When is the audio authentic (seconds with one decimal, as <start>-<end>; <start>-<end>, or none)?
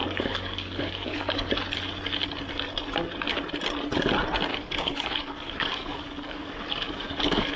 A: 1.5-4.5